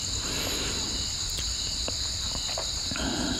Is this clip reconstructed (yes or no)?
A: no